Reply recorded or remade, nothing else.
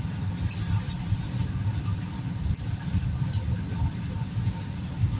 recorded